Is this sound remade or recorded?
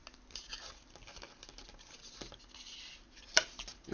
recorded